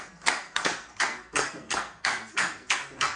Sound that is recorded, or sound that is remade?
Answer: remade